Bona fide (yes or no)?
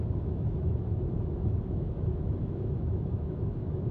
no